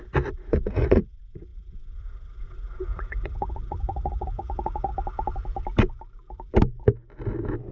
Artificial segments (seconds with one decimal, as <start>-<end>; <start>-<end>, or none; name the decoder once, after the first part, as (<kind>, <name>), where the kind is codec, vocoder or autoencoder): 0.0-4.9 (vocoder, Vocos)